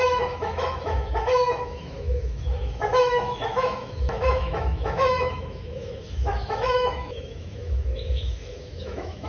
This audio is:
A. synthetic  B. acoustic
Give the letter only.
A